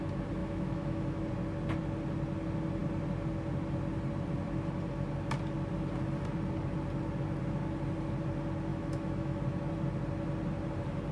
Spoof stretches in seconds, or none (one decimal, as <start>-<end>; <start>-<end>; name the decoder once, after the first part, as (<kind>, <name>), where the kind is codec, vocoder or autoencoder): 0.4-1.3 (autoencoder, DAC-VAE); 8.7-9.4